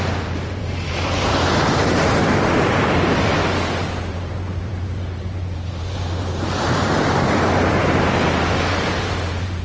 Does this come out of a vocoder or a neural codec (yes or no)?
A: yes